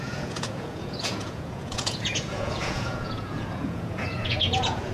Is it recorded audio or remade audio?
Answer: remade